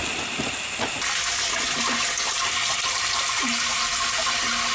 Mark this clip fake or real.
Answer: real